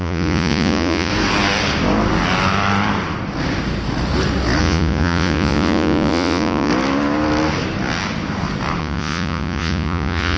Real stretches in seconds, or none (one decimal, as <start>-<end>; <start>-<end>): 1.1-4.6; 6.7-8.8